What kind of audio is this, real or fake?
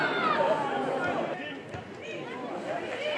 real